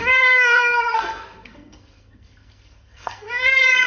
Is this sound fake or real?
fake